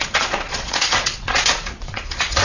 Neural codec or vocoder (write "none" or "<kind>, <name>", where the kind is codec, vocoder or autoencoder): vocoder, Vocos